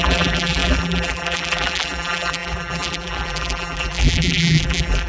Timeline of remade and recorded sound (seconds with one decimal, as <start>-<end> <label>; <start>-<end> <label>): 0.0-5.1 remade